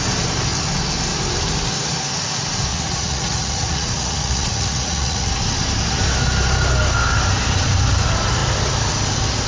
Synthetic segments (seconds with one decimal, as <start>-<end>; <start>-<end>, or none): 2.7-5.4